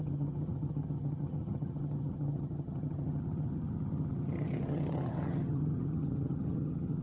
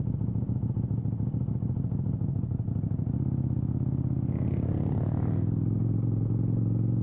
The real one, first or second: second